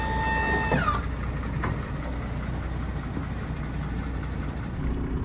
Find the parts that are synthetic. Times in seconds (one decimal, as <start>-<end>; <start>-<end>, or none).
2.9-5.2